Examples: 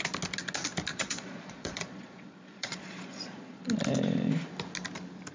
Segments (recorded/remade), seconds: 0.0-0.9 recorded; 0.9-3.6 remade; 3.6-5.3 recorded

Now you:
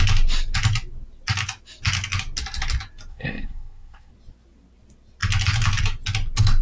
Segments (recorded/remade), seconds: 0.0-3.1 recorded; 3.1-4.1 remade; 4.1-6.6 recorded

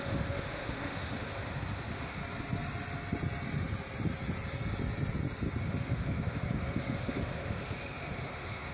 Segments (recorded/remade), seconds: 0.0-2.2 remade; 2.2-5.6 recorded; 5.6-8.7 remade

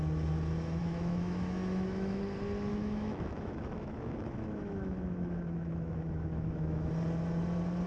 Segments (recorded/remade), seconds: 0.0-0.8 recorded; 0.8-2.2 remade; 2.2-2.7 recorded; 2.7-6.9 remade; 6.9-7.9 recorded

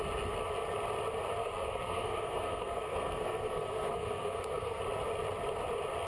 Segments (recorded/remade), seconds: 0.0-1.4 recorded; 1.4-4.8 remade; 4.8-6.1 recorded

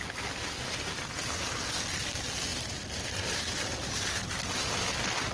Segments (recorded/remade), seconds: 0.0-2.5 recorded; 2.5-4.2 remade; 4.2-5.3 recorded